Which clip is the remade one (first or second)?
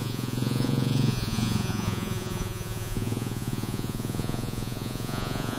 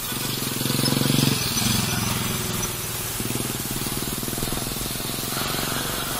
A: first